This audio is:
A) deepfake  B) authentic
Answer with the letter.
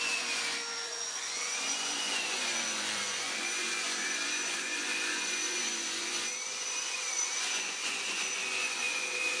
A